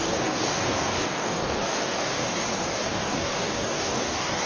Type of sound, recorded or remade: remade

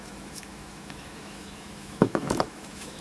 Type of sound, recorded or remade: remade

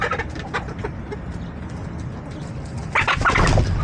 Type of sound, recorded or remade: recorded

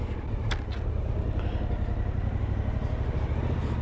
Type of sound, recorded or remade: recorded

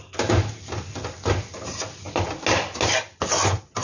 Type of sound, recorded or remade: recorded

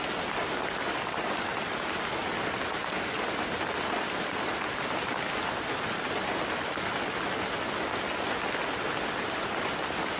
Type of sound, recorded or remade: recorded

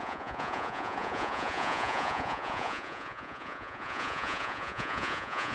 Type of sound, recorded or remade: remade